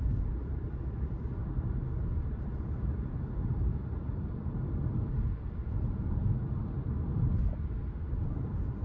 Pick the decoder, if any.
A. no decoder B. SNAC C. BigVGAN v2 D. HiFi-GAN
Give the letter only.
C